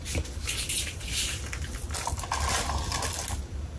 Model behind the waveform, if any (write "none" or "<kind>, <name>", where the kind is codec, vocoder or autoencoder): none